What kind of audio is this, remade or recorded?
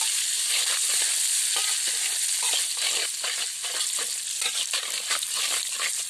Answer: recorded